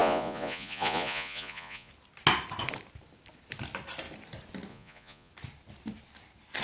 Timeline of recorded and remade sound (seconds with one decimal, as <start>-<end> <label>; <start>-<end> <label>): 0.0-1.9 remade; 1.9-4.7 recorded; 4.7-5.3 remade; 5.3-6.6 recorded